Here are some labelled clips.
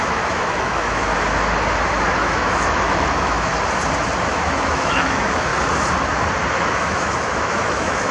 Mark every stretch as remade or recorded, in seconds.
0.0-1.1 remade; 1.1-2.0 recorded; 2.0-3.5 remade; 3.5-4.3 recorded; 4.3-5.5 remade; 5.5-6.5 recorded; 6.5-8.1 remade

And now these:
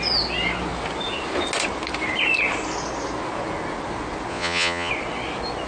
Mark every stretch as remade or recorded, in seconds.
0.0-4.3 recorded; 4.3-4.9 remade; 4.9-5.7 recorded

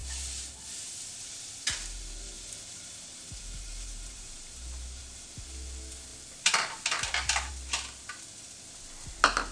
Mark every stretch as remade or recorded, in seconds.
0.0-5.0 remade; 5.0-9.5 recorded

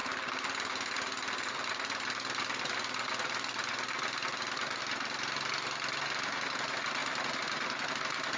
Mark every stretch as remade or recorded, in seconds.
0.0-8.4 recorded

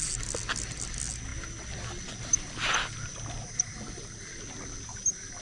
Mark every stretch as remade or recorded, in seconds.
0.0-5.4 recorded

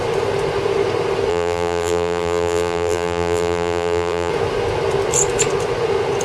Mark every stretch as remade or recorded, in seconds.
0.0-1.3 recorded; 1.3-4.3 remade; 4.3-6.2 recorded